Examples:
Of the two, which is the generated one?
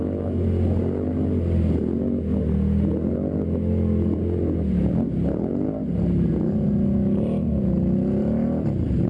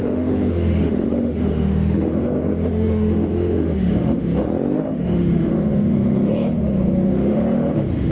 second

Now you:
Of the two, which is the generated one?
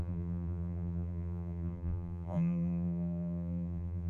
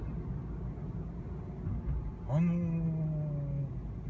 first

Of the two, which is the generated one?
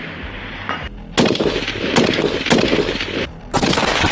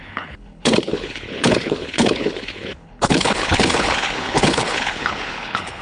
second